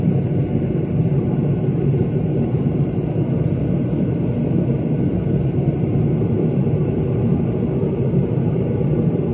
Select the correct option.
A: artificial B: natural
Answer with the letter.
A